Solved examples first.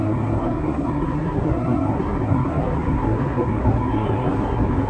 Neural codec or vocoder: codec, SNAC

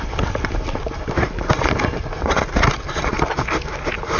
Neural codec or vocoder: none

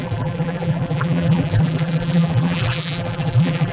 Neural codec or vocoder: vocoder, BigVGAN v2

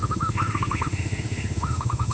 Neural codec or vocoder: autoencoder, DAC-VAE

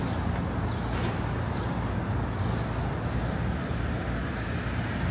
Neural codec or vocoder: none